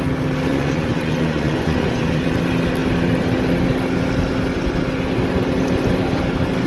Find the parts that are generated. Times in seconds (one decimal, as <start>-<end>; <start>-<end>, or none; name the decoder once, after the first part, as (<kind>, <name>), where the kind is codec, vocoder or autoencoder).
0.5-2.3 (vocoder, Vocos)